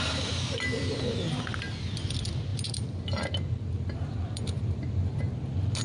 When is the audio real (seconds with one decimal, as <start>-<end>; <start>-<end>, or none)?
0.0-2.5; 5.2-5.8